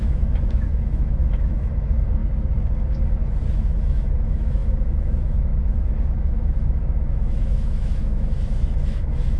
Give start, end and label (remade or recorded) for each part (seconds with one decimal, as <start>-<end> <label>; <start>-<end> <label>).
0.0-2.2 remade; 2.2-3.5 recorded; 3.5-9.4 remade